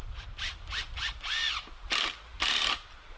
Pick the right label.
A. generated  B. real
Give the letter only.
B